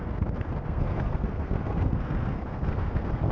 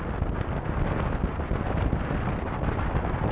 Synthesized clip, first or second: first